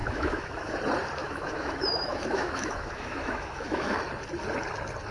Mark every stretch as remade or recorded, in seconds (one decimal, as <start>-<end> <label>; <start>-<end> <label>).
0.0-0.7 remade; 0.7-1.2 recorded; 1.2-4.0 remade; 4.0-5.1 recorded